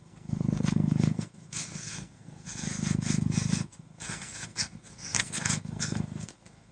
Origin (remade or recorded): remade